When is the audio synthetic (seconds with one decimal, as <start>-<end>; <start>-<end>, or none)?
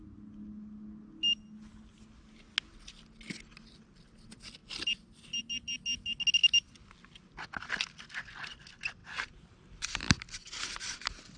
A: none